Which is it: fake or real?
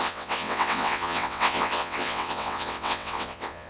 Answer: fake